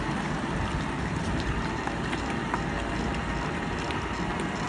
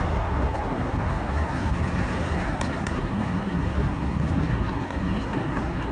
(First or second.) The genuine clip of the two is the first